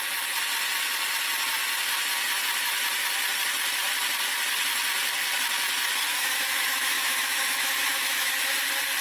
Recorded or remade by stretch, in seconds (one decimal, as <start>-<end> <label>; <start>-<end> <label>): 0.0-6.1 recorded; 6.1-8.3 remade; 8.3-9.0 recorded